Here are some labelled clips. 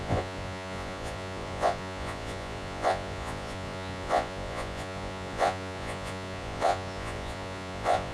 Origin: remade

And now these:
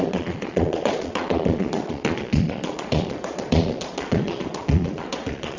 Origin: remade